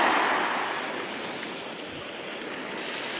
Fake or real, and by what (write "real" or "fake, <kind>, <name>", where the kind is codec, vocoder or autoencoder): real